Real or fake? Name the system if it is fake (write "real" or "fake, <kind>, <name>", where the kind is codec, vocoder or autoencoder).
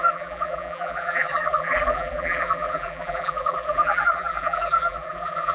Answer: fake, vocoder, BigVGAN v2